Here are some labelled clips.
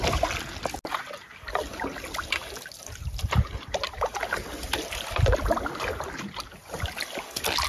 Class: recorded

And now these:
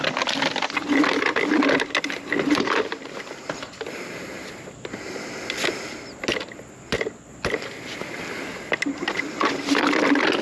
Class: recorded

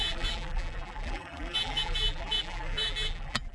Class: remade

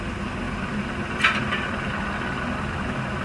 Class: recorded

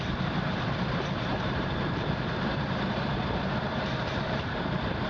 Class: remade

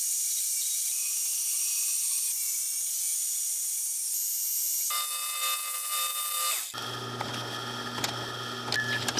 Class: recorded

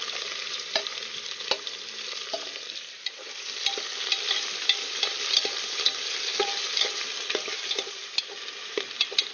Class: remade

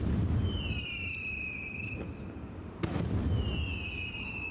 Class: remade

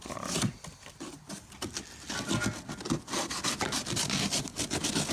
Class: recorded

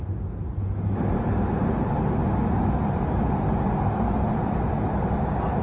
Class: recorded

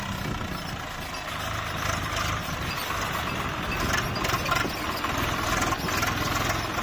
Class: recorded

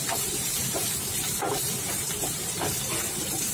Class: remade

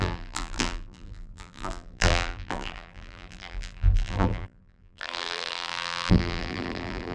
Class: remade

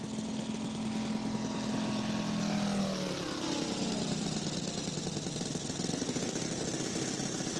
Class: recorded